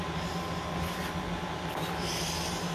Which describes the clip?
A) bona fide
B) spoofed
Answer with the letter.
A